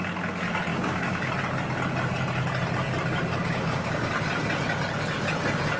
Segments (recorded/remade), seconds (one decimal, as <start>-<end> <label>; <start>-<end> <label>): 0.0-0.7 recorded; 0.7-1.3 remade; 1.3-3.4 recorded; 3.4-4.1 remade; 4.1-5.8 recorded